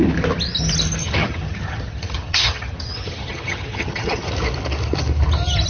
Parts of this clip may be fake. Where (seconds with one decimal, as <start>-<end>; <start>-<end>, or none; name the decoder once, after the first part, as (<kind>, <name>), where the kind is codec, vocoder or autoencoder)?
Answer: 1.0-4.3 (vocoder, HiFi-GAN)